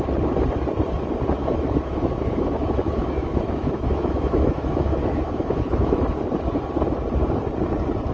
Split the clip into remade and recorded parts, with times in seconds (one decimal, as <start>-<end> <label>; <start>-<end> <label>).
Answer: 0.0-1.4 recorded; 1.4-6.0 remade; 6.0-8.1 recorded